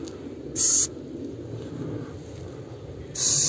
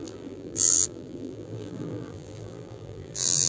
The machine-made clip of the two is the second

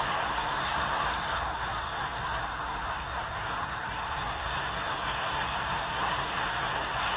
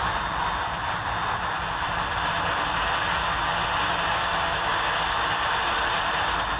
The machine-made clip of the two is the first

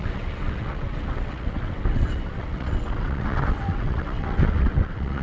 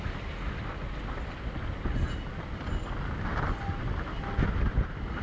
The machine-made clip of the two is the first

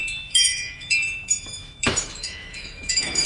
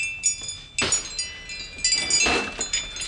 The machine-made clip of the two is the first